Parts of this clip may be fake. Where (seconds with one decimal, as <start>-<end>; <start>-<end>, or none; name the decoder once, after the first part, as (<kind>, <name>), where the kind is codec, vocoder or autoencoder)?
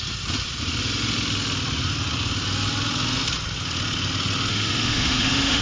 4.5-5.6 (autoencoder, DAC-VAE)